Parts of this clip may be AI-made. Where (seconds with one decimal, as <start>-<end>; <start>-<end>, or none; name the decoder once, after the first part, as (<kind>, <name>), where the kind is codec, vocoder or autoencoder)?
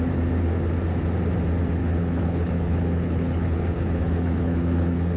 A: 1.8-5.2 (codec, HILCodec)